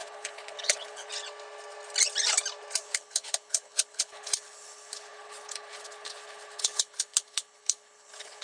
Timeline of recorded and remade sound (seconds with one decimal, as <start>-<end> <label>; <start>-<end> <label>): 0.0-1.1 remade; 1.1-2.8 recorded; 2.8-8.4 remade